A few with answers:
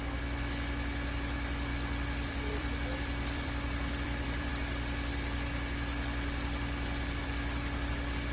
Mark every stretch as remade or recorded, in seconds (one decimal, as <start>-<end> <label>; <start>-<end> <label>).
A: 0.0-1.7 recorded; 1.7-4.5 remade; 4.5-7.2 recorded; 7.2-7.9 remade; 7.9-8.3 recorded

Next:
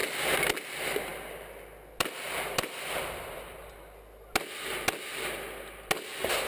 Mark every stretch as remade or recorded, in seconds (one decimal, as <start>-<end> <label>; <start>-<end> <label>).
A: 0.0-6.5 recorded

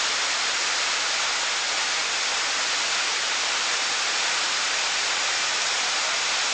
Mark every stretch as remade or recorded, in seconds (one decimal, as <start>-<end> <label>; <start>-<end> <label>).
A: 0.0-2.0 recorded; 2.0-3.9 remade; 3.9-6.5 recorded

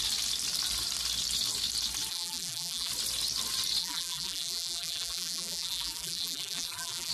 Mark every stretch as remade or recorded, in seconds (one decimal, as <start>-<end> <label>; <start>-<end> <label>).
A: 0.0-2.1 recorded; 2.1-2.9 remade; 2.9-3.8 recorded; 3.8-7.1 remade

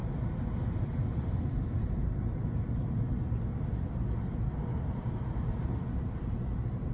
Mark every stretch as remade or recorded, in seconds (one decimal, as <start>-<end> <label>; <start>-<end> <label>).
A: 0.0-0.8 recorded; 0.8-2.0 remade; 2.0-4.4 recorded; 4.4-6.9 remade

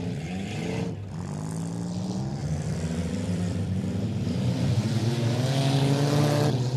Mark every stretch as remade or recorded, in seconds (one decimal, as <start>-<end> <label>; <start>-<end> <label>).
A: 0.0-2.4 recorded; 2.4-5.1 remade; 5.1-6.8 recorded

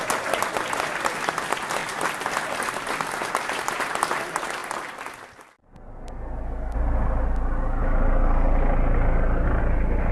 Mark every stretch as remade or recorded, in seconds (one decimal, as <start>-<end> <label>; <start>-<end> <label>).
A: 0.0-1.8 recorded; 1.8-3.6 remade; 3.6-10.1 recorded

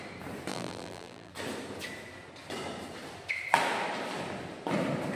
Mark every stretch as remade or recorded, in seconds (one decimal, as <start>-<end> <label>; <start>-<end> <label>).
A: 0.0-0.5 recorded; 0.5-1.3 remade; 1.3-5.2 recorded